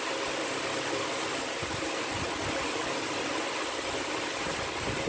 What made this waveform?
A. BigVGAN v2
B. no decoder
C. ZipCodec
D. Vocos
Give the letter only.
B